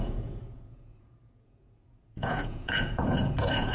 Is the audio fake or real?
fake